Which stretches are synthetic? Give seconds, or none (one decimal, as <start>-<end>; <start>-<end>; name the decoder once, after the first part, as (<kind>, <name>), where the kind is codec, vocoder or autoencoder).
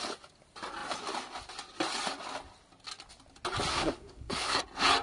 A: 3.7-4.6 (codec, SNAC)